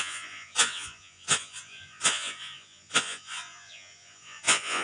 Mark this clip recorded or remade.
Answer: remade